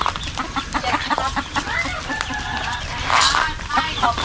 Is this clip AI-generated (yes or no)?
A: no